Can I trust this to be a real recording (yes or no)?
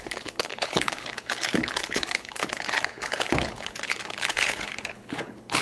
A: no